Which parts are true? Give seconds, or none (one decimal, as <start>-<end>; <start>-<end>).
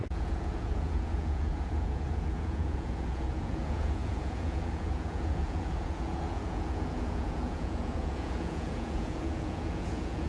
none